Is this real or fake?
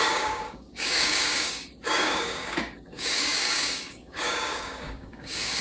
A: fake